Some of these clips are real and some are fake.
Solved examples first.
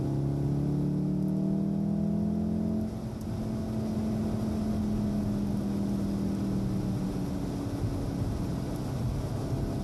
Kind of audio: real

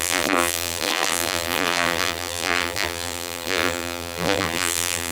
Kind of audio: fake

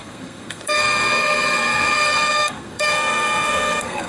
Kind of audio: fake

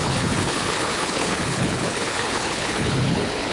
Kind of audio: fake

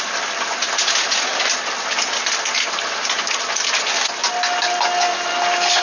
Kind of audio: real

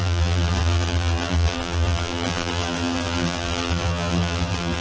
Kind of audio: fake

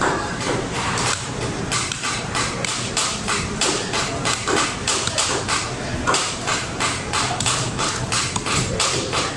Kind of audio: fake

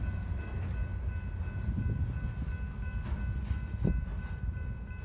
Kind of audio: real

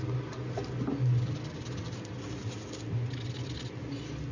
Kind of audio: real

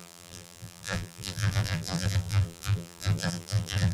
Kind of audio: fake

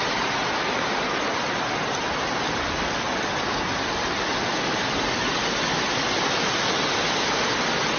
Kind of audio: real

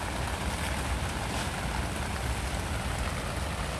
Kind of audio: real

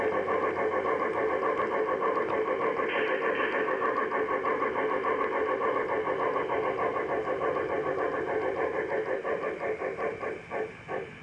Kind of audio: real